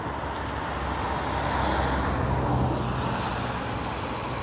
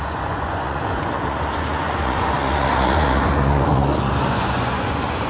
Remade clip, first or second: second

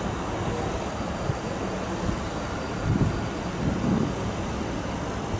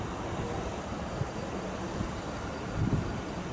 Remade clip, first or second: second